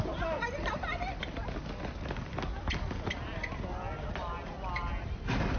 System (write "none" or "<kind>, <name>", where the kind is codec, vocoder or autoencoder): none